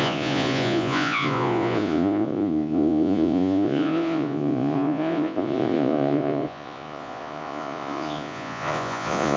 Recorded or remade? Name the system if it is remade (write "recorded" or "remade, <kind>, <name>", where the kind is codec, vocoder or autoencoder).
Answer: remade, vocoder, Vocos